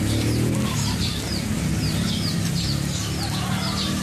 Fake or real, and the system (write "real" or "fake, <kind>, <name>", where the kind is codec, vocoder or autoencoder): real